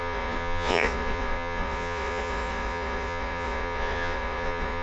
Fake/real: fake